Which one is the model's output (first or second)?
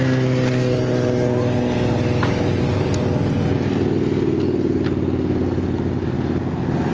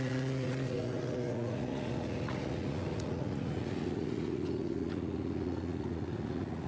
second